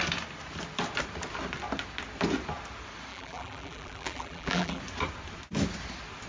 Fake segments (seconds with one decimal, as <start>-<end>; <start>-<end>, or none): 3.1-4.8